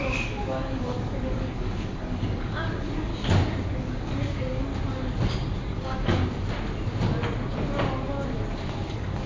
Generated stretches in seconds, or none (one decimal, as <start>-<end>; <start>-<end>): 0.0-3.1; 3.7-4.7; 5.6-6.2; 8.9-9.3